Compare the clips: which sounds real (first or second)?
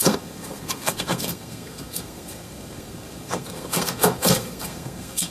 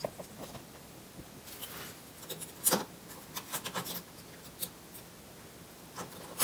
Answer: second